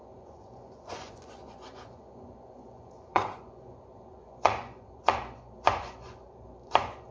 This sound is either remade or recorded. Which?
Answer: remade